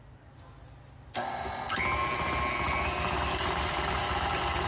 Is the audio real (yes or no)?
yes